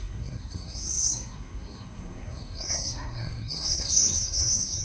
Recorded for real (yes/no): no